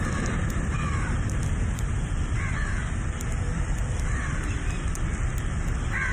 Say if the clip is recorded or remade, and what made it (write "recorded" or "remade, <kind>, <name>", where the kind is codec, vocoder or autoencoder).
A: recorded